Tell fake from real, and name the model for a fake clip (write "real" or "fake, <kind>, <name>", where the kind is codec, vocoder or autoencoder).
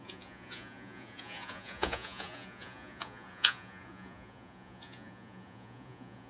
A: fake, vocoder, Vocos